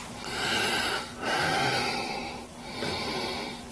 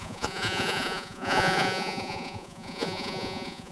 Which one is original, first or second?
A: first